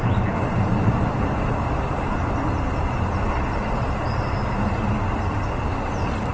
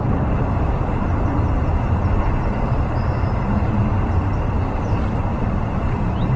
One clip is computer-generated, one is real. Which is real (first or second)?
first